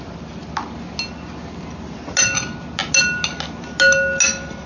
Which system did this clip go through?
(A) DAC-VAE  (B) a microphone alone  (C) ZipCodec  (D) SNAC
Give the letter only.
B